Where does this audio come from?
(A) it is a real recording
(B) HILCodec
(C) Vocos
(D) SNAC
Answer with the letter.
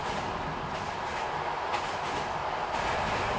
A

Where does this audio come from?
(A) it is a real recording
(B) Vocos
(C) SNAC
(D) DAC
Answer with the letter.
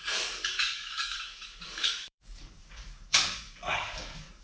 D